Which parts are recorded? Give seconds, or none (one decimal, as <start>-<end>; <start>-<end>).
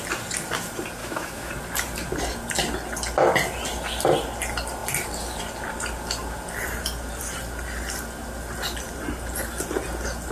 0.0-1.0; 1.5-10.3